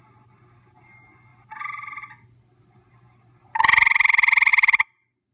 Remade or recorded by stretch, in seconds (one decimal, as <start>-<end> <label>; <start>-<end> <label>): 0.0-5.3 recorded